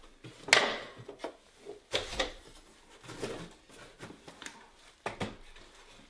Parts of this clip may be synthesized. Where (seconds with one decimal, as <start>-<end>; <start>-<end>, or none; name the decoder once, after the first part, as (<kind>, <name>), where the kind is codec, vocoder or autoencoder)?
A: 0.7-1.3 (vocoder, BigVGAN v2); 2.1-2.7